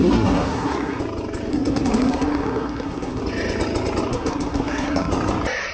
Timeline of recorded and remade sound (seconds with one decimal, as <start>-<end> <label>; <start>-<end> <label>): 0.0-1.0 remade; 1.0-1.5 recorded; 1.5-3.2 remade; 3.2-4.1 recorded; 4.1-5.1 remade; 5.1-5.7 recorded